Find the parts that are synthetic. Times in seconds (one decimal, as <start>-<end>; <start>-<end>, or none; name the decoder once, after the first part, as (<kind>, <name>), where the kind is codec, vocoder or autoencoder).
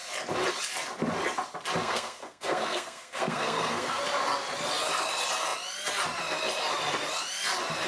1.8-4.0 (codec, SNAC)